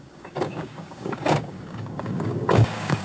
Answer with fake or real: fake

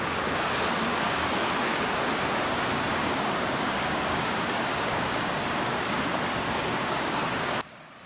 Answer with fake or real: fake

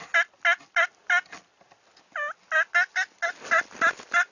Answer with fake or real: real